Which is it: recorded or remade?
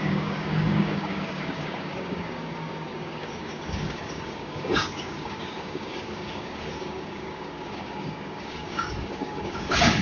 remade